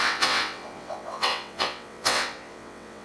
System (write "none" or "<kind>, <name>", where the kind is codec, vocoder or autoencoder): vocoder, WaveNeXt